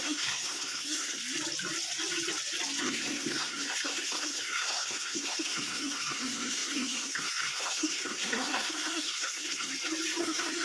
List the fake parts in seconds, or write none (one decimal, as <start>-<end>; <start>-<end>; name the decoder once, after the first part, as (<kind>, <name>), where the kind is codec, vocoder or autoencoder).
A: 0.0-1.2 (codec, SNAC); 2.8-9.7; 10.2-10.6